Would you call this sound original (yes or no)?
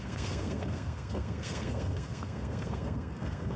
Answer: no